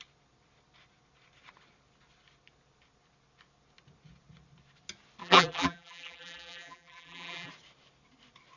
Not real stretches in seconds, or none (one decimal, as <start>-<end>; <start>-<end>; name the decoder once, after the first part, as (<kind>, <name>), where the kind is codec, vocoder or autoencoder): 5.2-7.5 (vocoder, BigVGAN v2)